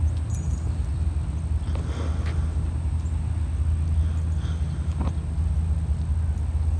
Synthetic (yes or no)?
no